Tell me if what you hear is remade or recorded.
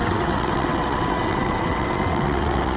remade